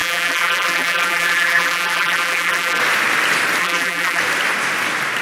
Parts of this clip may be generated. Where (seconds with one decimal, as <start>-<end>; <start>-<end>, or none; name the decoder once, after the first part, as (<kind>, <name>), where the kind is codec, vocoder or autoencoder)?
0.0-2.8 (vocoder, BigVGAN v2); 3.6-4.2